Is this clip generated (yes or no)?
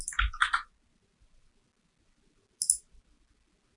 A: no